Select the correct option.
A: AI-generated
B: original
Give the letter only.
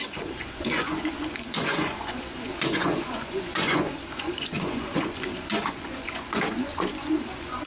A